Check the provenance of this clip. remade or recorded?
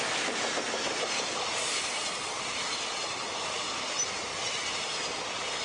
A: recorded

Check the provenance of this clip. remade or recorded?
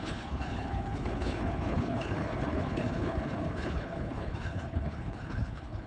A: remade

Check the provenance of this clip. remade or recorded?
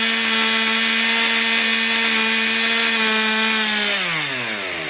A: recorded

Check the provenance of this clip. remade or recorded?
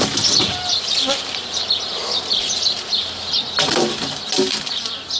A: recorded